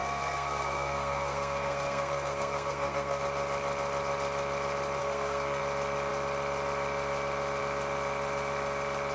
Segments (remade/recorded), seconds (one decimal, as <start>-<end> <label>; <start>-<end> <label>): 0.0-3.2 remade; 3.2-5.0 recorded; 5.0-5.6 remade; 5.6-9.1 recorded